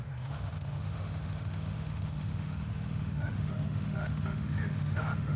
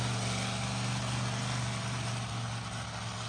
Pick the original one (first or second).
second